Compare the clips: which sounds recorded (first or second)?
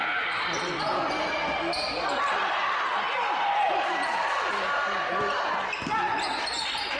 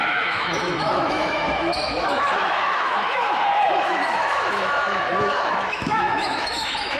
first